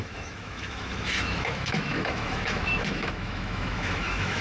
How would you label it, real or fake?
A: fake